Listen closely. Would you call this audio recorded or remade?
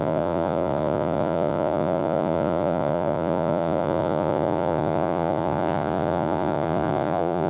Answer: remade